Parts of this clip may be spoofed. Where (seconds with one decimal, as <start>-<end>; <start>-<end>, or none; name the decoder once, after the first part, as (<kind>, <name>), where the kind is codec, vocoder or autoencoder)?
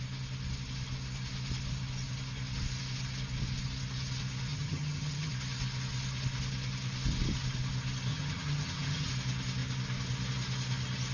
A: 4.5-5.3 (vocoder, HiFi-GAN); 8.1-9.1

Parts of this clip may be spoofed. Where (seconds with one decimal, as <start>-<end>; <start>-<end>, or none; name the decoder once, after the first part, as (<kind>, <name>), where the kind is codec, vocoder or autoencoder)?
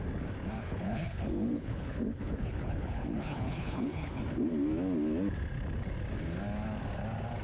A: 0.6-4.2 (codec, HILCodec)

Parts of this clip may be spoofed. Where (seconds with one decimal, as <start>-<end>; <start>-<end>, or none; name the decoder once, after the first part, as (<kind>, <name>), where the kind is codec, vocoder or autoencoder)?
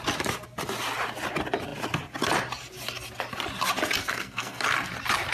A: 4.0-4.6 (codec, SNAC)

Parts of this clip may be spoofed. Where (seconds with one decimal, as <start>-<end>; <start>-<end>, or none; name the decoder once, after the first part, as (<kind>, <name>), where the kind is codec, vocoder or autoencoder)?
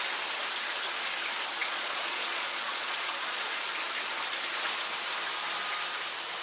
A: 1.6-3.5 (vocoder, Vocos)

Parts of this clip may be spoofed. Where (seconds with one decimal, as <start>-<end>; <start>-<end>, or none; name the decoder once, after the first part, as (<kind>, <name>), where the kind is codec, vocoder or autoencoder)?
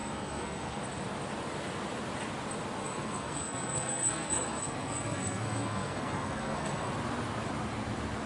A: 0.0-0.8 (codec, SNAC); 2.8-6.9